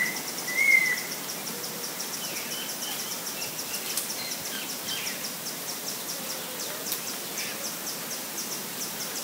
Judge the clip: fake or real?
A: real